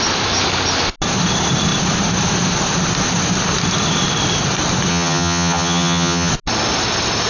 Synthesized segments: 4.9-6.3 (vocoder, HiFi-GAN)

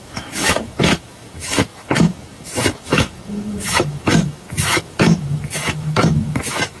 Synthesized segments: 0.0-6.8 (autoencoder, DAC-VAE)

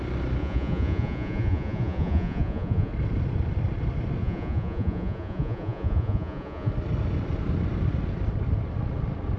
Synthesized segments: 0.4-2.9 (vocoder, Vocos); 4.2-6.7

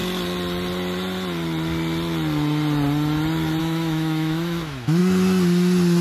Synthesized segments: 3.6-5.0 (autoencoder, DAC-VAE)

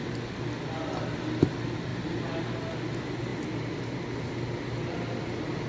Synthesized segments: none